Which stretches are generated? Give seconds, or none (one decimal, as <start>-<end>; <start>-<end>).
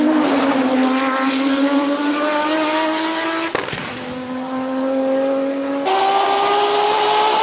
none